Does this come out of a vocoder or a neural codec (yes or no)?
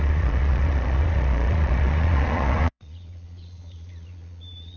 yes